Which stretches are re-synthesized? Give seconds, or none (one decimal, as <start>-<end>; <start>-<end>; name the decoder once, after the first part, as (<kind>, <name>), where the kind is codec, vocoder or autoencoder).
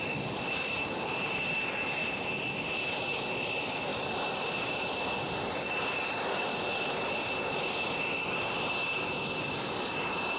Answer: none